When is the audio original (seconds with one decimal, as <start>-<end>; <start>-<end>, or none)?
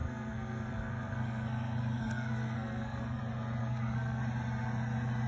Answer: 3.2-3.6; 4.2-5.3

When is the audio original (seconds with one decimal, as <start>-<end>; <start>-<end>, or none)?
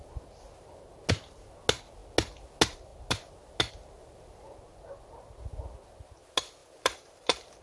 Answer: 0.0-6.6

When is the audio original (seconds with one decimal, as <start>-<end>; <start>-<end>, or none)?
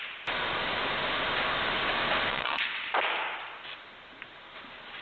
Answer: 0.0-2.3; 2.9-5.0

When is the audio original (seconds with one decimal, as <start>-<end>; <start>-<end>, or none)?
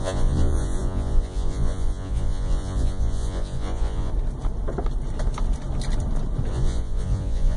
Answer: 4.1-6.5